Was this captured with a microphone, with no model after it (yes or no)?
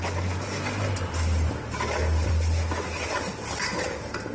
no